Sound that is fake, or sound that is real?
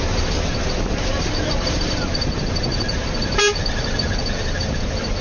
real